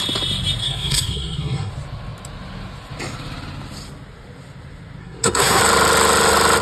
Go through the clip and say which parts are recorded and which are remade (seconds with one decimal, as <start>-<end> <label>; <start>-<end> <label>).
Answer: 0.0-0.6 recorded; 0.6-1.7 remade; 1.7-5.0 recorded; 5.0-5.6 remade; 5.6-6.6 recorded